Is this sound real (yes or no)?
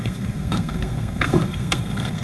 no